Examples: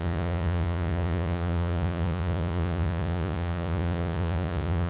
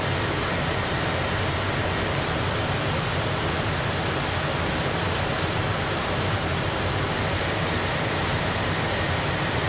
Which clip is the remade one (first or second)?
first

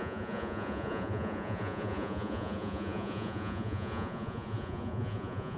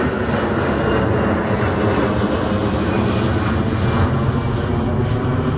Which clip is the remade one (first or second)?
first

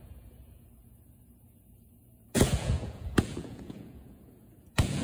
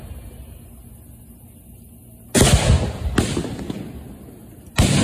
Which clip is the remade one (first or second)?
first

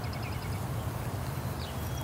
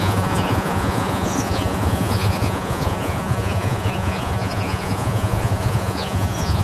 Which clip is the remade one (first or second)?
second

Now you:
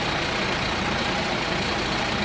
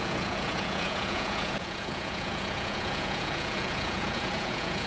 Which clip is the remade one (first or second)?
second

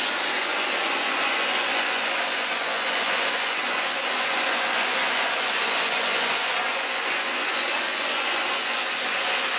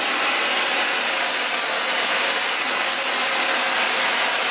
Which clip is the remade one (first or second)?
first